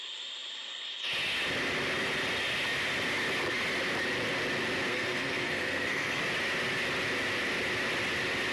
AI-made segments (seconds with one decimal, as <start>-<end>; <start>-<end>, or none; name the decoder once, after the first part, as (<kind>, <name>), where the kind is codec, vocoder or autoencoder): 4.9-6.2 (codec, SNAC)